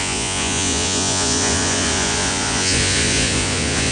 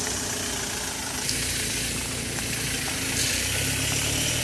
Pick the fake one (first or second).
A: first